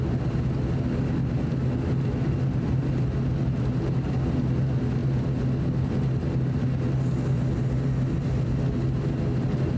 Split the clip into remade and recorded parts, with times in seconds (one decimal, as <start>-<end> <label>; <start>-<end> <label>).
0.0-9.8 recorded